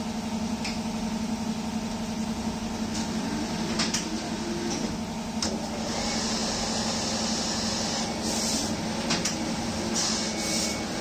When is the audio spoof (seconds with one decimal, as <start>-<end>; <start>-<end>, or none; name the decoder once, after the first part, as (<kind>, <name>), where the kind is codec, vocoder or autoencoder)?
none

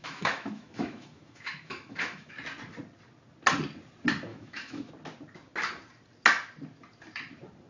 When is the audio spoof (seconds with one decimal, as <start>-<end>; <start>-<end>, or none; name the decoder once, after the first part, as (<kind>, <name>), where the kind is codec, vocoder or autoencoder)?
0.0-2.3 (autoencoder, DAC-VAE); 4.3-4.9

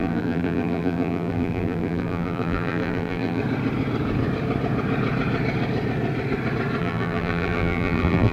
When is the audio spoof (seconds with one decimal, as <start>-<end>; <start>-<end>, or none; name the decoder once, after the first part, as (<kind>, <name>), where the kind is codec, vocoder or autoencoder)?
0.0-3.4 (vocoder, BigVGAN v2); 6.8-8.3

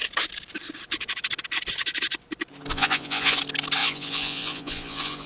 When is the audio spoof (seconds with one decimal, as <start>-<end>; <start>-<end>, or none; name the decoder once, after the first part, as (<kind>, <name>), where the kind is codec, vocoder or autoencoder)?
2.7-3.4 (vocoder, Vocos); 3.8-5.3

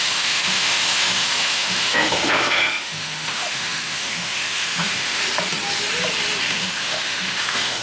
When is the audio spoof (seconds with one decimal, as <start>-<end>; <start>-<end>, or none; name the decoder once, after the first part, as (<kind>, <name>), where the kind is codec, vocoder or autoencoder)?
0.0-5.2 (autoencoder, DAC-VAE); 6.5-7.8

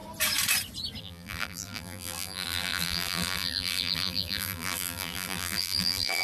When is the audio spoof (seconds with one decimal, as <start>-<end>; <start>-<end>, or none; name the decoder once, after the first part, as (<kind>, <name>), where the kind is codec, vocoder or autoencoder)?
1.0-6.2 (vocoder, BigVGAN v2)

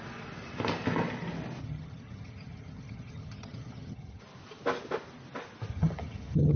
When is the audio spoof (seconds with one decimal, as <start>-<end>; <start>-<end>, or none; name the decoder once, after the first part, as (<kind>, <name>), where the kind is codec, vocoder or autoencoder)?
1.6-4.2 (vocoder, HiFi-GAN); 5.7-6.6